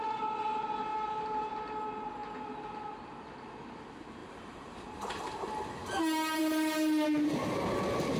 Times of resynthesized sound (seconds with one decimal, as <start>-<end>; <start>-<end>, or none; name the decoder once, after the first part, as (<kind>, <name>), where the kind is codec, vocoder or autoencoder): 0.9-1.5 (vocoder, BigVGAN v2); 4.2-6.4